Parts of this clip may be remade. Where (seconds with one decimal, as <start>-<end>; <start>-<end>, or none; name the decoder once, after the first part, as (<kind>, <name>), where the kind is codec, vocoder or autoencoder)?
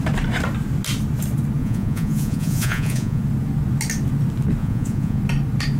1.6-3.2 (vocoder, Vocos); 4.6-5.2